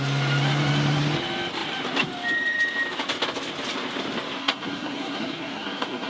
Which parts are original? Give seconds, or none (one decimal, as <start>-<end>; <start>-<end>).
0.0-4.4